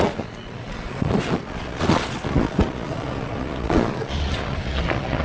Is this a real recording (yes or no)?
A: no